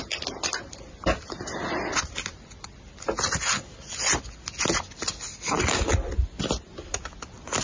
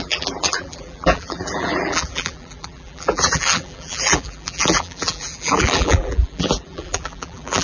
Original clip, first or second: first